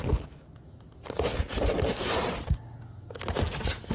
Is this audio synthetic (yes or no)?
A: no